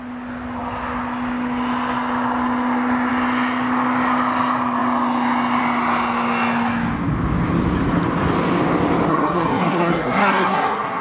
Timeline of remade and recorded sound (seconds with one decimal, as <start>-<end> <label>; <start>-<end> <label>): 0.0-9.1 recorded; 9.1-11.0 remade